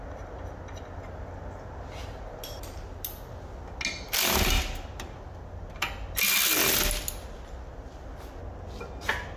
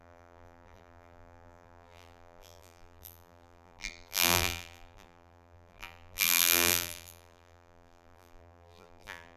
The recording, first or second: first